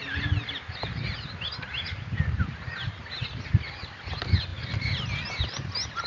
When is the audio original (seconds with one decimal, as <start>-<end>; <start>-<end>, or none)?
0.0-6.1